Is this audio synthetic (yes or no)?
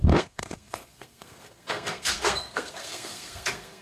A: yes